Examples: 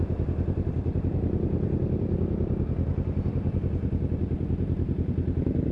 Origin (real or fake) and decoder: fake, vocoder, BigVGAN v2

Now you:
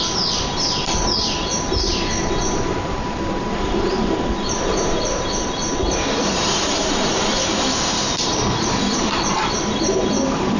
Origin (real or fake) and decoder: fake, vocoder, BigVGAN v2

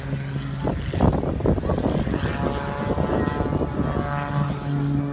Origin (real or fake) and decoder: real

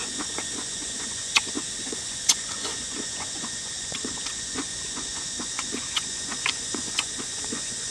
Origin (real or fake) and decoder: fake, vocoder, Vocos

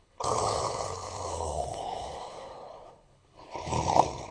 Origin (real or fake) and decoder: fake, codec, HILCodec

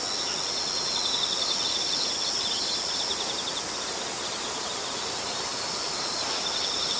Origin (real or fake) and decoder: real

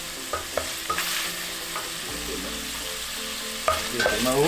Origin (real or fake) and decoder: real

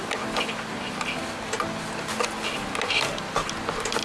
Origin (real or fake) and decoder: real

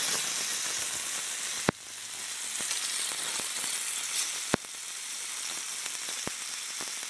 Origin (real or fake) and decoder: real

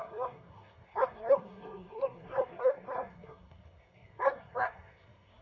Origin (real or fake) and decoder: fake, codec, SNAC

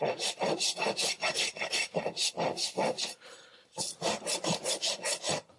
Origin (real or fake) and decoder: fake, vocoder, BigVGAN v2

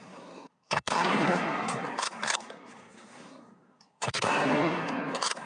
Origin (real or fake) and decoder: fake, codec, SNAC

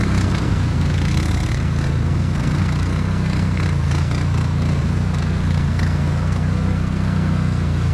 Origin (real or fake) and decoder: fake, codec, SNAC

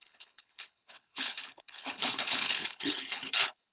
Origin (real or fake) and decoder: fake, codec, HILCodec